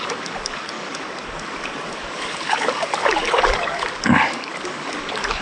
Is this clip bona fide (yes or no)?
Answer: no